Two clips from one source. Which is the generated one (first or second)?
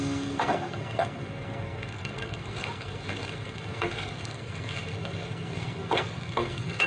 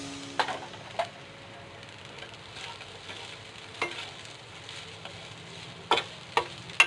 first